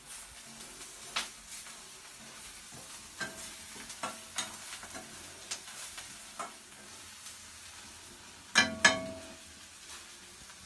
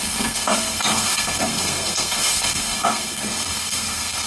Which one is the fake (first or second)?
second